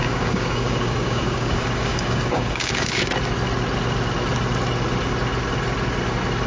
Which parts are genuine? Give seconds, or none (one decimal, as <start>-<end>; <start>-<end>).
3.1-6.5